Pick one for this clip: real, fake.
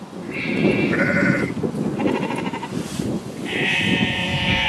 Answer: fake